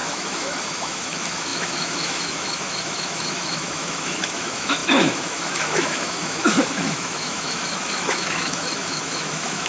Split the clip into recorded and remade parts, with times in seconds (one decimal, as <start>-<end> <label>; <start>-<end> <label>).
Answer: 0.0-9.7 remade